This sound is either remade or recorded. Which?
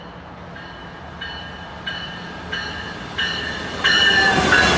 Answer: recorded